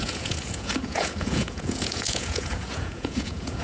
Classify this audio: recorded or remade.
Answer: remade